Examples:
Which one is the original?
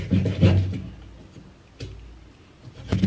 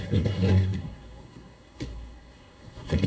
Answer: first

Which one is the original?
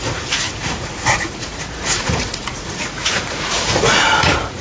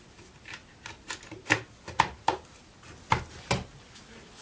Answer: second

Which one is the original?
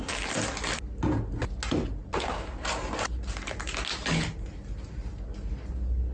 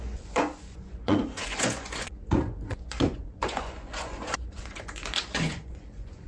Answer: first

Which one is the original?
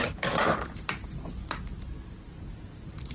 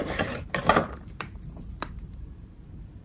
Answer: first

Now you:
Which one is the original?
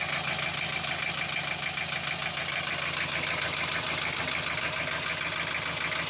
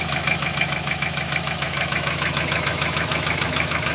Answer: first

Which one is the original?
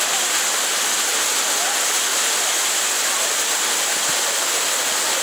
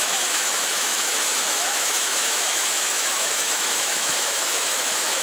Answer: first